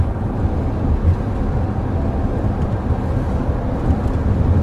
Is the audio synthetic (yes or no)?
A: no